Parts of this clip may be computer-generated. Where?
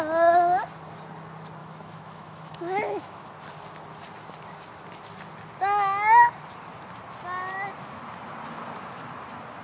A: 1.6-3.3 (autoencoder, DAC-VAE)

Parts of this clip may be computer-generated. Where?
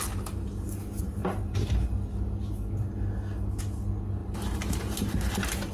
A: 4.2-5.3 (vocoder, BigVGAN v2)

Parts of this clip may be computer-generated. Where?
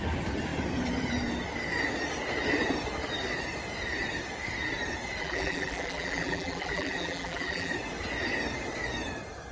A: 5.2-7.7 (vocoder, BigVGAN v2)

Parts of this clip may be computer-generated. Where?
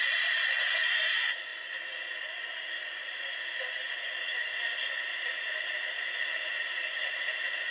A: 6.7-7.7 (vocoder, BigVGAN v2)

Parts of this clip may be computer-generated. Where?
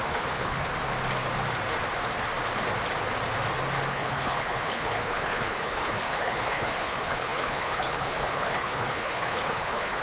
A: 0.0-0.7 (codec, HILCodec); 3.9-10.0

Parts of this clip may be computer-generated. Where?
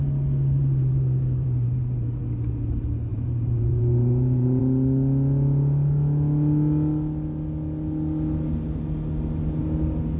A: 0.6-2.2 (vocoder, BigVGAN v2); 3.1-4.6